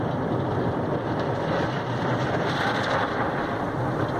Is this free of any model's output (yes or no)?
no